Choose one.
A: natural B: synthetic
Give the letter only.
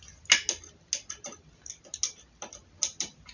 A